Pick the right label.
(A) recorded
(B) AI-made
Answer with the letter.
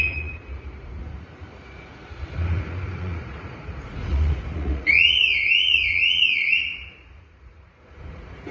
B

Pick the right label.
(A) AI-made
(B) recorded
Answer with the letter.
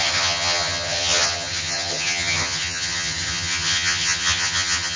A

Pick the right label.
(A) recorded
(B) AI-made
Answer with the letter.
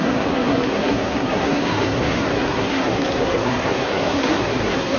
B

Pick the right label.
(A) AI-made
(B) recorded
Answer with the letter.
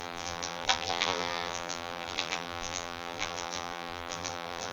A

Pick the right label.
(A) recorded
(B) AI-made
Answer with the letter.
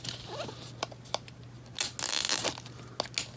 A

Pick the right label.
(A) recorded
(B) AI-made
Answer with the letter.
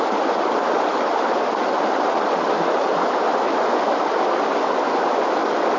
A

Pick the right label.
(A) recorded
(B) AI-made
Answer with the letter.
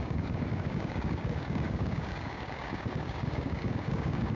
B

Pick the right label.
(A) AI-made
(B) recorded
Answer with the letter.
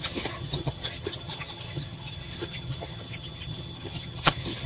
A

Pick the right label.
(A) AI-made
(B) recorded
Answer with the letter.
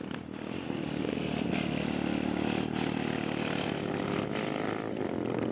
B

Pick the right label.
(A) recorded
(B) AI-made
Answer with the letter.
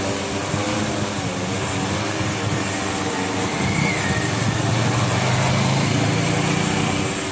A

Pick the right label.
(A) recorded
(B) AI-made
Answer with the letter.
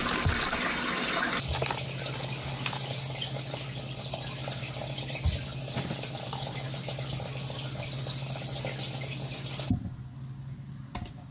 A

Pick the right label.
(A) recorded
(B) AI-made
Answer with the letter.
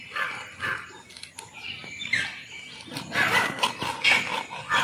A